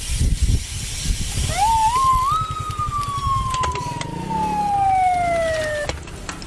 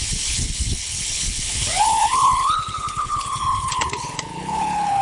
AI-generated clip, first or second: second